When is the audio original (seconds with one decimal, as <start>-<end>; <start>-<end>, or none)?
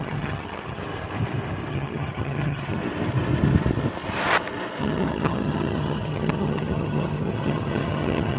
0.8-1.7; 2.8-4.8